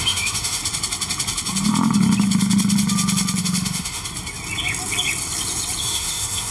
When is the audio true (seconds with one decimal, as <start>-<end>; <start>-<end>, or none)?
0.6-3.4; 4.1-5.8